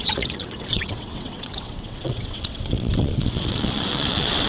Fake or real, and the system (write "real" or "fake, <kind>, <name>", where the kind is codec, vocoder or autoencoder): fake, vocoder, WaveNeXt